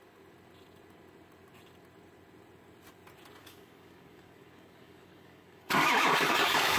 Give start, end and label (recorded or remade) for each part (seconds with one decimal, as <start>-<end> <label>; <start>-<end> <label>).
0.0-3.4 recorded; 3.4-6.8 remade